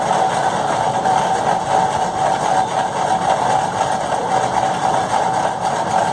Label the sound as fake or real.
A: real